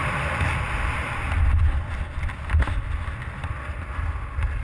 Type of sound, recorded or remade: recorded